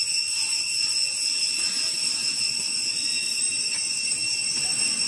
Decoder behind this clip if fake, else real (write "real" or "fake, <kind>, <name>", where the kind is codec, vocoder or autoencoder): real